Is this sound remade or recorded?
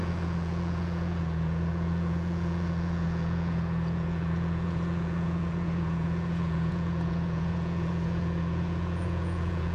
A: remade